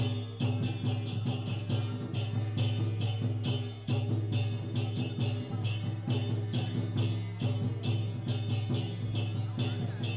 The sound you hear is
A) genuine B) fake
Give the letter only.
A